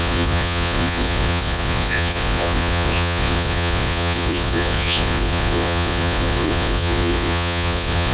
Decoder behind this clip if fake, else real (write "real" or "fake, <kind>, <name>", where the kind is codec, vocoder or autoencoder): fake, vocoder, Vocos